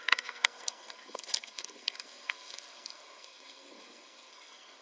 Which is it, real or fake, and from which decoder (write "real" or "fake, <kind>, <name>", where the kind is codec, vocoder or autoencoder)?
fake, codec, SNAC